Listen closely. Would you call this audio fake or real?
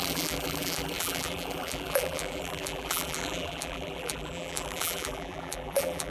fake